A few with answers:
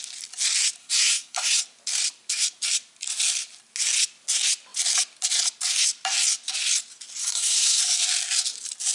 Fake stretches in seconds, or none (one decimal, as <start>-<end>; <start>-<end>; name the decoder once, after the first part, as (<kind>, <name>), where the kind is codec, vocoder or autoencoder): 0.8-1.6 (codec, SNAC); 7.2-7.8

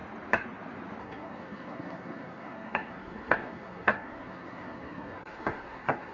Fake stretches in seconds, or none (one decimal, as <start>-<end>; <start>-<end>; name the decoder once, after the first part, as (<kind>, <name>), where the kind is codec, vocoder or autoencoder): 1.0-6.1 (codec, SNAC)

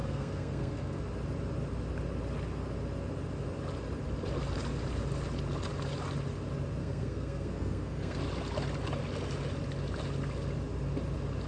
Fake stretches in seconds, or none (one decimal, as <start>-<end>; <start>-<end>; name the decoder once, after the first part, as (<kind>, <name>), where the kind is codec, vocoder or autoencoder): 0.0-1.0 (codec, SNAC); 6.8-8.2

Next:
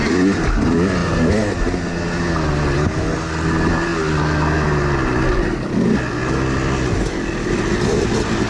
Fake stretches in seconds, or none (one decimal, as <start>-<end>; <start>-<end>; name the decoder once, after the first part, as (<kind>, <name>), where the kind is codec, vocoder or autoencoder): none

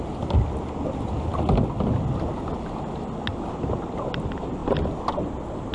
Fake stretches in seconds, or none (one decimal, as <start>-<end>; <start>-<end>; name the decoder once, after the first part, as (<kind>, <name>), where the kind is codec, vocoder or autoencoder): none